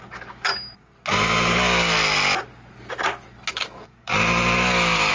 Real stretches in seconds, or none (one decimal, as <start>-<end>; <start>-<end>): 0.5-3.5; 4.1-5.1